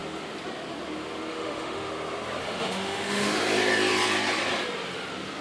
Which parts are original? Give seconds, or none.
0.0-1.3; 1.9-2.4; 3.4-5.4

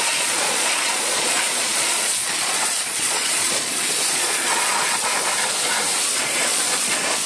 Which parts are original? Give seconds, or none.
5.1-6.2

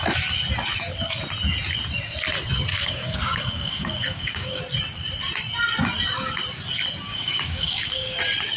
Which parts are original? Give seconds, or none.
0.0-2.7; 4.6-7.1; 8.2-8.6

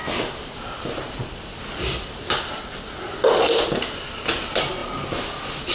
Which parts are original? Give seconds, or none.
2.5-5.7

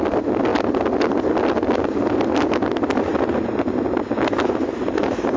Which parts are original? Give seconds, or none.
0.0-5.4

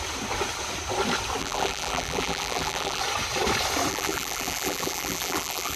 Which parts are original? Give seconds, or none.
0.0-1.4; 3.0-3.9

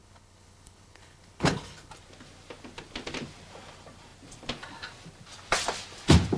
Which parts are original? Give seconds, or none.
1.9-6.4

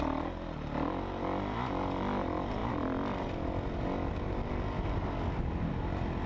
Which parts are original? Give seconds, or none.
0.0-6.3